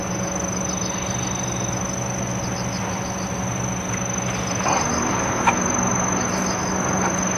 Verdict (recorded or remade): recorded